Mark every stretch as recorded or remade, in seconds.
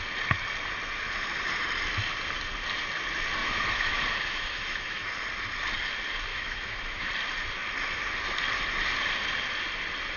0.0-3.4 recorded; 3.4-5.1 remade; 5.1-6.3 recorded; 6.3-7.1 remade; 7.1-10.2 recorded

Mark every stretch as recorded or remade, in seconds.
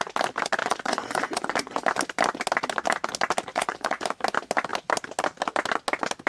0.0-0.6 recorded; 0.6-1.8 remade; 1.8-3.5 recorded; 3.5-4.0 remade; 4.0-6.3 recorded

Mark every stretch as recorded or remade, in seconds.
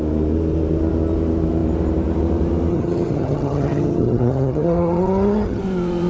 0.0-2.7 recorded; 2.7-5.6 remade; 5.6-6.1 recorded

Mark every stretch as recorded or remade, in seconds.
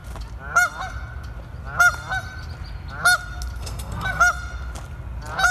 0.0-3.6 recorded; 3.6-4.2 remade; 4.2-5.5 recorded